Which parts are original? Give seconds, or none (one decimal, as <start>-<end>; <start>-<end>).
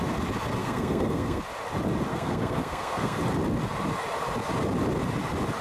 0.0-0.6; 1.4-2.1; 3.2-5.6